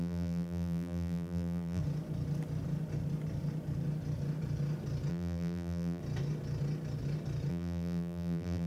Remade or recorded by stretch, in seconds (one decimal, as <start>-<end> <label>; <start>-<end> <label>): 0.0-1.8 remade; 1.8-5.1 recorded; 5.1-6.0 remade; 6.0-7.5 recorded; 7.5-8.7 remade